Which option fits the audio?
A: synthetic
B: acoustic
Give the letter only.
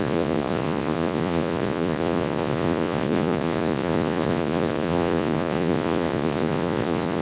A